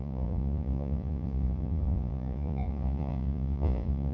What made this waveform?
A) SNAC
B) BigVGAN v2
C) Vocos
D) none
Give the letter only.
C